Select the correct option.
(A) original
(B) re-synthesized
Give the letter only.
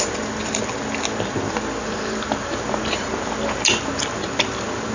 A